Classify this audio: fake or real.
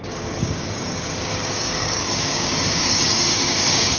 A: fake